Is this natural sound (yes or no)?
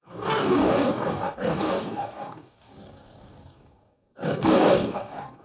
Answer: no